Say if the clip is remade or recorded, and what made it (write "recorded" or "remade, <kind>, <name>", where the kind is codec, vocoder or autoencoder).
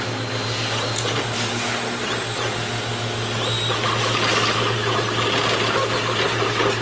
recorded